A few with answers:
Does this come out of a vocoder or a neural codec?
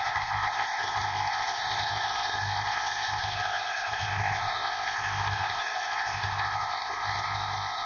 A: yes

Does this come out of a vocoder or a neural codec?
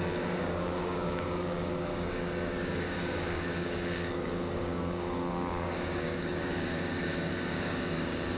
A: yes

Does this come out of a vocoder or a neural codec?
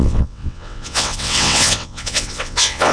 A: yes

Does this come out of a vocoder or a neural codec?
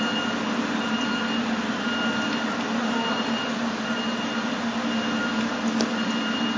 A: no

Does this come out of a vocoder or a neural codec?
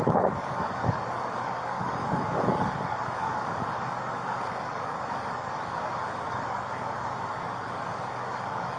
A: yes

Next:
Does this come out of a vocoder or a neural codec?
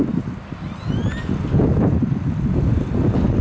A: no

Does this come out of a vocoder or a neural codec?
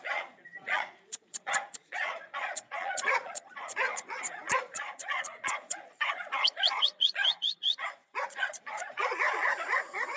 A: yes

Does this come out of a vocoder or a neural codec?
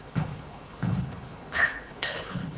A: yes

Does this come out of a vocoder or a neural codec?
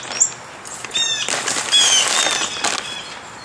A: no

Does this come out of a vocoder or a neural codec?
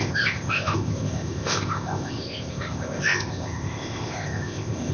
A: yes